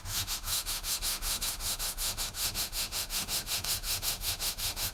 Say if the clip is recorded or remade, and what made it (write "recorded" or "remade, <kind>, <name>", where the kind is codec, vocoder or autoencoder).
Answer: remade, autoencoder, DAC-VAE